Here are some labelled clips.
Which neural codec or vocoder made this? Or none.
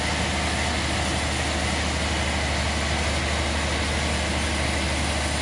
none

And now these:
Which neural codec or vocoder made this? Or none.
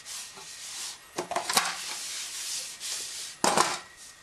none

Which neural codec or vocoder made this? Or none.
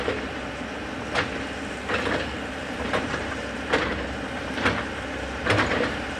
vocoder, BigVGAN v2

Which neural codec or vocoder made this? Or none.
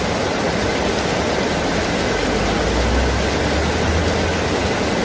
none